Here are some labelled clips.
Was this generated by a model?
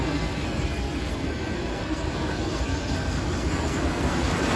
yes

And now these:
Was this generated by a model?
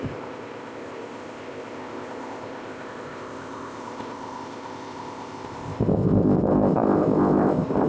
yes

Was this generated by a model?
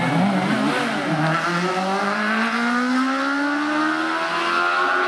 no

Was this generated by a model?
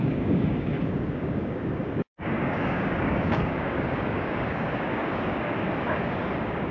yes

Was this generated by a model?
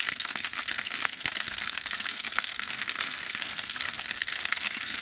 yes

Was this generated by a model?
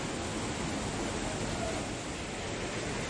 no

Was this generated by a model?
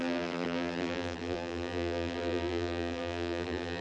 yes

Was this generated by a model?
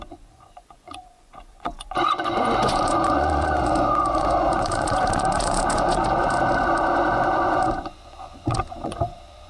yes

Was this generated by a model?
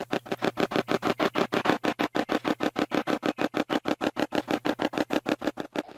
no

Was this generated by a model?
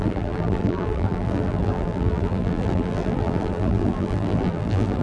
yes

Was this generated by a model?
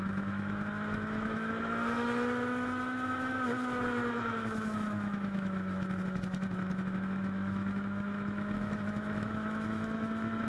yes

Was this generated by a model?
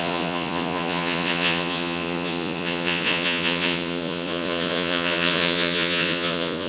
yes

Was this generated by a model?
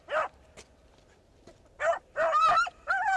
yes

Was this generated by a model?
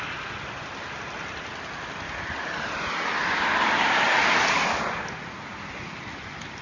no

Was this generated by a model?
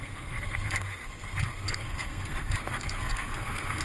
yes